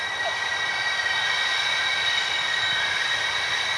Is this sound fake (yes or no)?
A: no